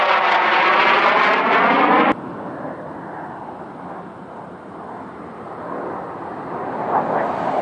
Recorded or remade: recorded